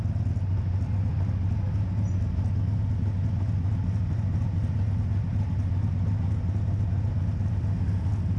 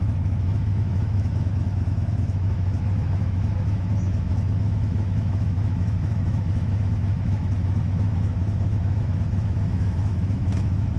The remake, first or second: second